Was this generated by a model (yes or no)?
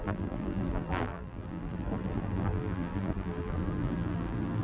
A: yes